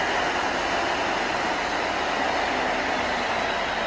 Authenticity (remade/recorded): recorded